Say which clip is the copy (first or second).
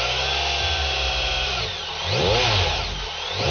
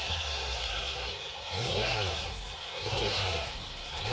second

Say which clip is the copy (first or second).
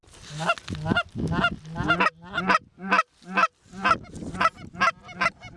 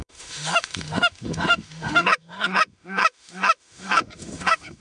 second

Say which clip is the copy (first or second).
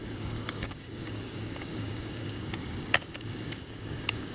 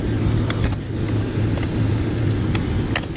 first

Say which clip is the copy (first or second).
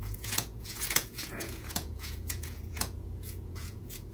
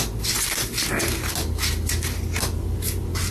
first